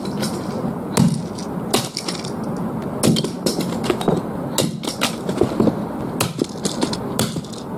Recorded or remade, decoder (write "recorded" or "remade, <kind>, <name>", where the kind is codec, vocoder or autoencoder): recorded